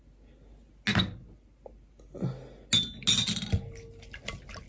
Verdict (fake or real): real